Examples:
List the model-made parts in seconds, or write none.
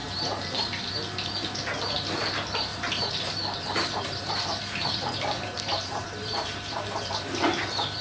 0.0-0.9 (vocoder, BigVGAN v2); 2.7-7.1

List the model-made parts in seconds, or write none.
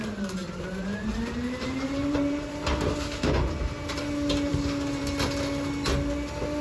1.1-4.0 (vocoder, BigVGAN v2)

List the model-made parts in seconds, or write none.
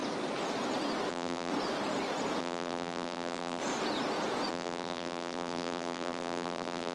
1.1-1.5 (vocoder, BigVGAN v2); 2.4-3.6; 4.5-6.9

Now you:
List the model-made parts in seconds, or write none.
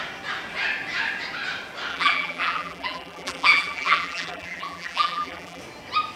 1.9-5.6 (vocoder, BigVGAN v2)